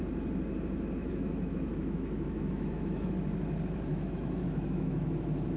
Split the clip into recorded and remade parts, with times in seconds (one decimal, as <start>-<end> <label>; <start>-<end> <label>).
0.0-1.0 recorded; 1.0-3.1 remade; 3.1-3.9 recorded; 3.9-5.6 remade